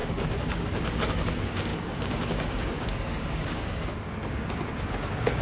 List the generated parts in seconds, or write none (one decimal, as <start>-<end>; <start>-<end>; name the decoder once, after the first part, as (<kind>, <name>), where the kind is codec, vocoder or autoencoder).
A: 0.0-5.4 (codec, DAC)